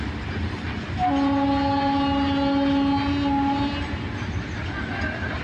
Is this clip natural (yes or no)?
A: yes